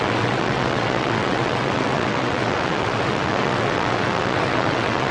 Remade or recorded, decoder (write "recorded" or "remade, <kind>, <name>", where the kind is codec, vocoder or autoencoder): remade, vocoder, WaveNeXt